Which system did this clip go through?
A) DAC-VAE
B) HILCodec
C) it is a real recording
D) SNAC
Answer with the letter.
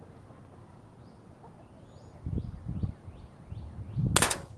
C